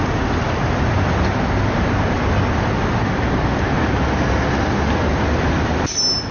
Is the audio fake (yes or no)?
no